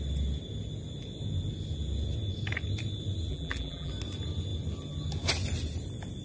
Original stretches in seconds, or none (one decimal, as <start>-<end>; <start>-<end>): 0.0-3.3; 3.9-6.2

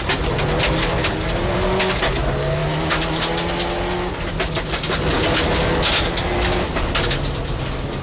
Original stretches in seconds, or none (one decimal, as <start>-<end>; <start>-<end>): 0.0-8.0

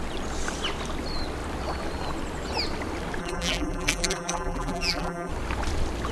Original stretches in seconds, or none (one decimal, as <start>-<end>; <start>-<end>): 0.0-3.2; 5.3-6.1

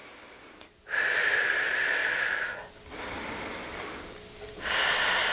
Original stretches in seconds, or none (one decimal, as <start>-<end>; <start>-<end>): 0.0-5.3